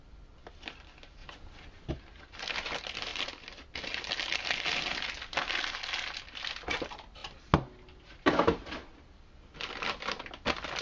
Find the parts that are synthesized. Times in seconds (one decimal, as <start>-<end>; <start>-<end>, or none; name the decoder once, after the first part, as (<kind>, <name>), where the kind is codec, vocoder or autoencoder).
none